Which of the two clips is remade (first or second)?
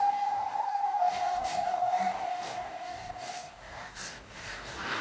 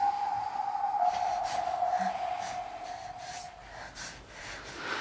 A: first